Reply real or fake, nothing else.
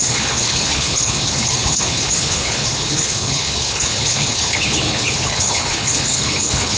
fake